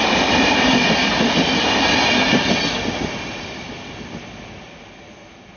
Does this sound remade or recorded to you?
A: recorded